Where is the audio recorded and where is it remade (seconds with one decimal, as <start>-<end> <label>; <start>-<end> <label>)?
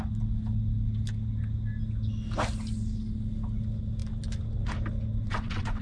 0.0-5.2 recorded; 5.2-5.8 remade